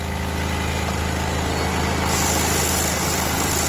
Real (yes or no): yes